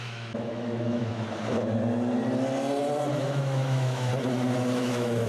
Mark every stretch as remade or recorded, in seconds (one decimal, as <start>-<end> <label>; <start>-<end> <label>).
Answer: 0.0-1.1 remade; 1.1-3.2 recorded; 3.2-4.1 remade; 4.1-4.8 recorded; 4.8-5.3 remade